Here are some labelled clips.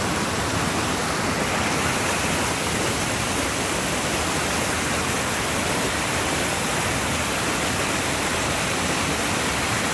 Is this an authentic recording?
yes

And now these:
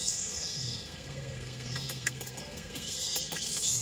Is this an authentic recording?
no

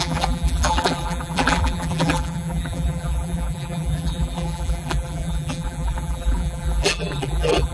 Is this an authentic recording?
no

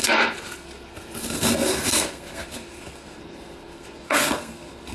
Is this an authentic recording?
no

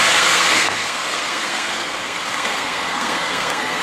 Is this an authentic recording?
no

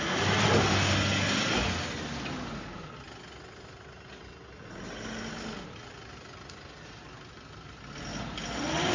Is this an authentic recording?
yes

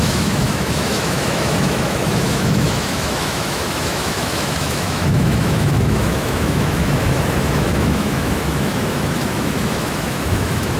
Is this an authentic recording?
no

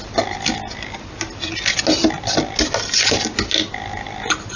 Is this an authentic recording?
yes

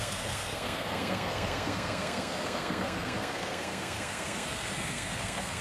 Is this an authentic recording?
no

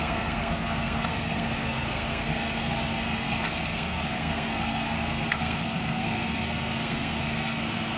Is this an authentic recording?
no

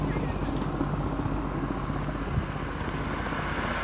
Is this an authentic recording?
yes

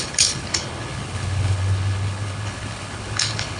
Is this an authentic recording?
no